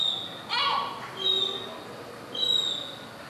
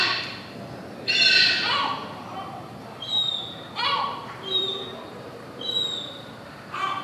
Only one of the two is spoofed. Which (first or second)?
second